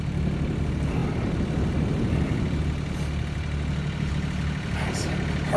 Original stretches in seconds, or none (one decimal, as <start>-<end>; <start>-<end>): 0.0-5.6

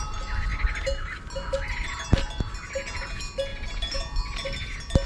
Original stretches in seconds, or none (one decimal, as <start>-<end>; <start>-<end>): 0.0-5.1

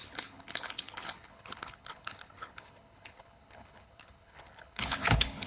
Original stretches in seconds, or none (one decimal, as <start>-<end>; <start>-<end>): none

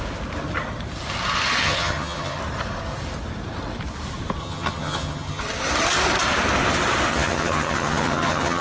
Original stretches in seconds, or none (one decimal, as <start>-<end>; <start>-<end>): 0.0-1.6; 2.4-4.4; 5.4-7.1

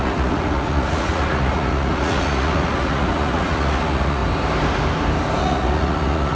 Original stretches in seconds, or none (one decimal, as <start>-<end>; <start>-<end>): 4.2-5.4

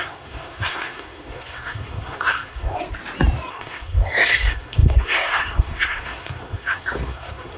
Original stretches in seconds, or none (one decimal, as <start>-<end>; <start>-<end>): 2.8-3.5

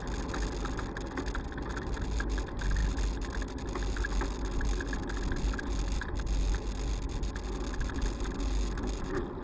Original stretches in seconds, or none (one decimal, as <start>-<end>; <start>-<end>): 0.0-9.4

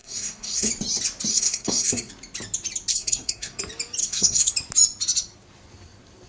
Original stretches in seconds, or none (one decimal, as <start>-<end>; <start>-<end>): 0.7-1.3; 2.1-2.9; 3.6-4.0; 4.5-6.3